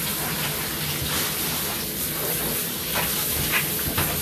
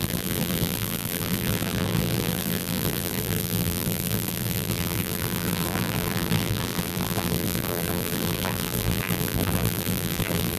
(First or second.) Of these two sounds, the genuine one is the first